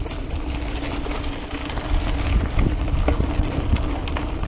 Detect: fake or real real